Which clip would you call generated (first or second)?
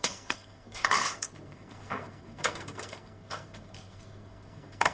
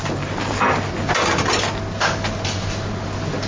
first